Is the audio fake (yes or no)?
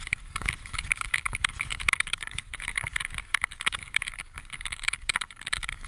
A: yes